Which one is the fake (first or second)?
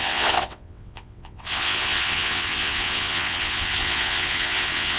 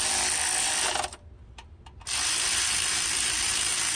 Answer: first